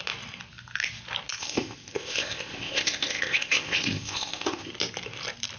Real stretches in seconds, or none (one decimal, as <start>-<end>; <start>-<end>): 0.0-1.4; 4.7-5.6

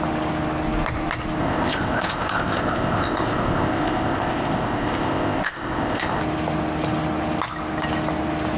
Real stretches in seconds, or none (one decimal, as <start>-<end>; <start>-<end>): 0.0-1.4; 6.2-8.6